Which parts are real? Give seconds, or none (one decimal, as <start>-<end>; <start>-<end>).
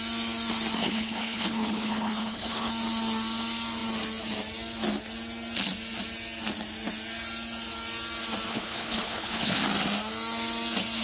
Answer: 0.0-0.8; 2.7-8.5; 9.6-11.0